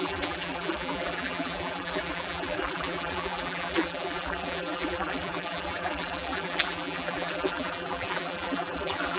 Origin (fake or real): fake